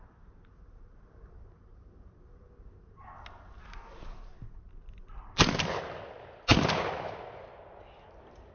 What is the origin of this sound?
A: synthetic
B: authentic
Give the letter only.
B